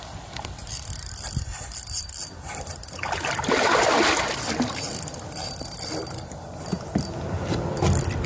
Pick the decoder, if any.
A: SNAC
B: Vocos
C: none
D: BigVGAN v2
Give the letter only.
D